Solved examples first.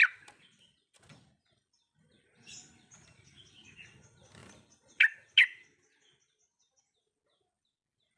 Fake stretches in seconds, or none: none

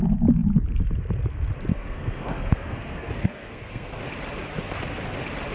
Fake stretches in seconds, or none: 1.7-4.0 (codec, SNAC)

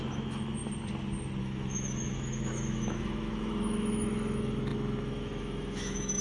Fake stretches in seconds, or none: 0.0-0.6 (autoencoder, DAC-VAE); 1.4-6.2

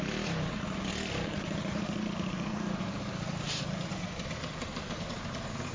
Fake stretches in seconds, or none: 0.9-4.3 (vocoder, BigVGAN v2); 4.7-5.7

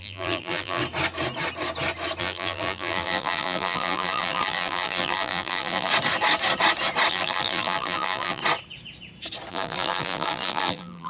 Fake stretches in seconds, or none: 0.0-0.8 (vocoder, BigVGAN v2); 2.2-5.9; 7.1-8.4; 9.5-11.1

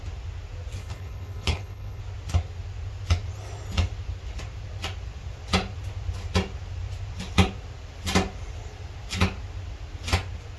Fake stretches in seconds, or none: 0.8-2.0 (codec, HILCodec)

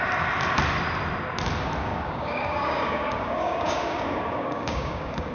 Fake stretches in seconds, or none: 1.8-5.3 (codec, DAC)

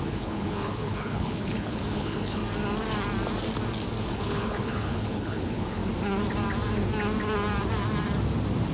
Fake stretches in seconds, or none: 0.0-2.4 (codec, HILCodec); 4.0-5.8